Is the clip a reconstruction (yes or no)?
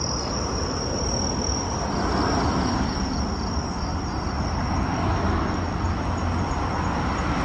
no